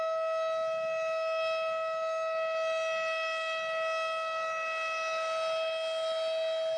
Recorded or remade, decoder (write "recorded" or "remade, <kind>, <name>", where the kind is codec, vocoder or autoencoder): recorded